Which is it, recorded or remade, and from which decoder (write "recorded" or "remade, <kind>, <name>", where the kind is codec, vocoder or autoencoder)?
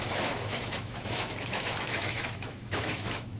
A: remade, autoencoder, DAC-VAE